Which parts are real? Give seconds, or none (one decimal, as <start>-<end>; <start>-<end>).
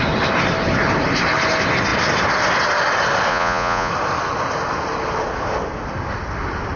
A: 0.0-3.3; 3.9-6.8